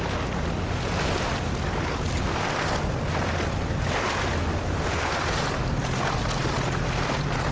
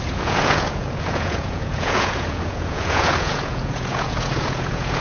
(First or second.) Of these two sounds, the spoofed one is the second